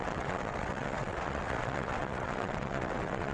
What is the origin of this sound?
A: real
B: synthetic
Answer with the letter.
B